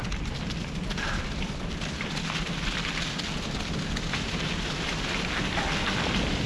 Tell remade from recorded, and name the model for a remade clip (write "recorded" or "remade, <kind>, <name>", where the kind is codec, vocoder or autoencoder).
recorded